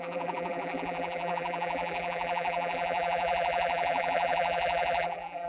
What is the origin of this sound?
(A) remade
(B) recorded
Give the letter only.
A